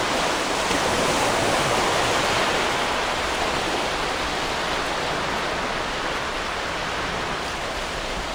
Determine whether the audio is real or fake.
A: real